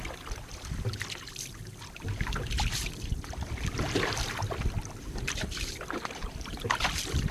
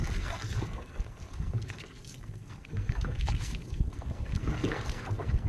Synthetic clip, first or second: second